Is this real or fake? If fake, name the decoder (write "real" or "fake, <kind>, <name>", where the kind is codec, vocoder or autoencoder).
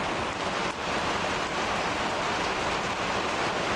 real